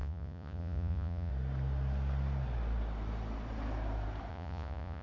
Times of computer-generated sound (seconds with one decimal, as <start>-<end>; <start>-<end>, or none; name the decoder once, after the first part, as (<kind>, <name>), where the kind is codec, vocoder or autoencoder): 0.0-1.3 (vocoder, Vocos); 4.3-5.0